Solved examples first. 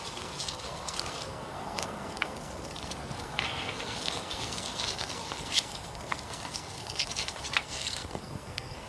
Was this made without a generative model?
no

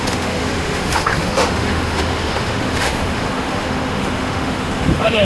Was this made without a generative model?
no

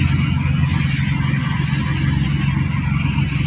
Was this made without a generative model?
yes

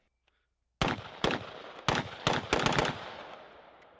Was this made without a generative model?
yes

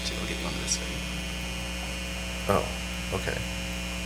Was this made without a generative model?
yes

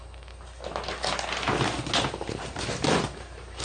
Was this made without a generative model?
yes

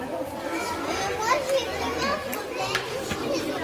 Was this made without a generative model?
yes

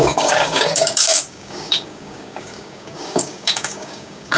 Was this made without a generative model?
no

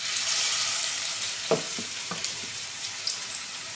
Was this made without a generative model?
no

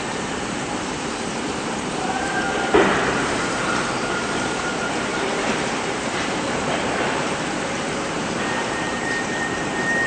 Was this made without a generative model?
no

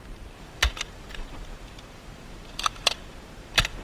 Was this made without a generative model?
no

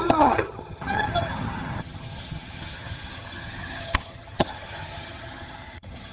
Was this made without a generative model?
no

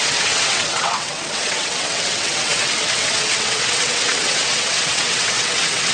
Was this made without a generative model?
no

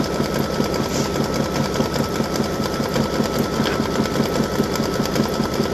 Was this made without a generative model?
yes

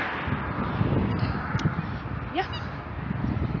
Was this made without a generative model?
yes